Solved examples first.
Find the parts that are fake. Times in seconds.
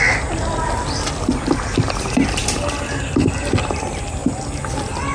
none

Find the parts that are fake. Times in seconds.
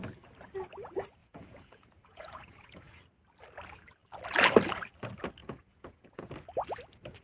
1.2-3.0 (vocoder, Vocos); 5.4-6.2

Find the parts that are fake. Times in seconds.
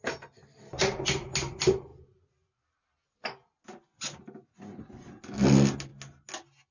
none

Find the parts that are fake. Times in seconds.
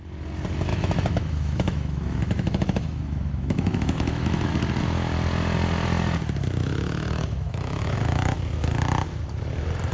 0.7-4.5 (autoencoder, DAC-VAE); 6.6-8.4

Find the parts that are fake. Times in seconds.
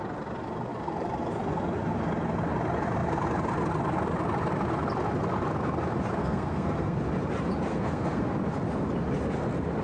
6.2-7.0 (codec, SNAC); 7.7-8.3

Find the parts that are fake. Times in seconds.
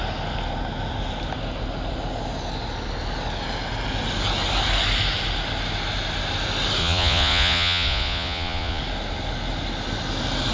6.8-8.8 (vocoder, Vocos)